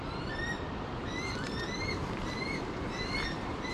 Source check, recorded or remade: remade